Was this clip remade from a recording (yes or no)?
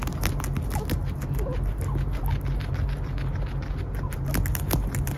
no